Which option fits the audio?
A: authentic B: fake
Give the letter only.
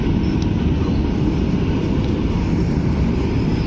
A